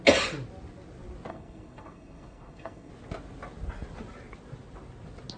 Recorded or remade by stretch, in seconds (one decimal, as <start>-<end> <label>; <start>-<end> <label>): 0.0-1.3 recorded; 1.3-2.9 remade; 2.9-5.4 recorded